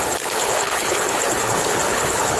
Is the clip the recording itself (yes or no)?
no